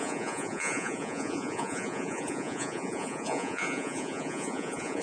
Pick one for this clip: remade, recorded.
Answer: remade